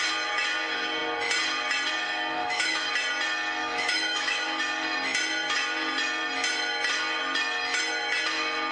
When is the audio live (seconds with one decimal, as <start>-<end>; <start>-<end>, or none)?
0.0-2.4; 2.9-3.6; 4.6-8.7